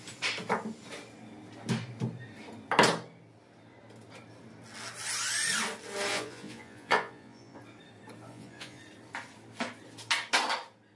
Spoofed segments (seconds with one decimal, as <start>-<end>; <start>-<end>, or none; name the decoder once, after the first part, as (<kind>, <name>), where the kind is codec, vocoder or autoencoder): 6.1-7.6 (vocoder, Vocos); 8.3-8.8